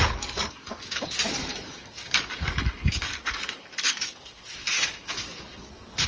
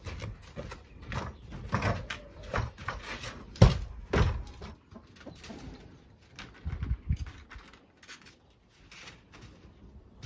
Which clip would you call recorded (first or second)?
second